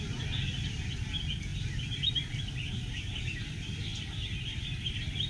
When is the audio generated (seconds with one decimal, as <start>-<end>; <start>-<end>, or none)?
3.9-4.6